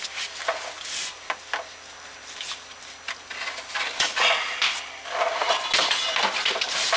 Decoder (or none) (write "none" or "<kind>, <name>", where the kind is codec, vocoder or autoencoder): none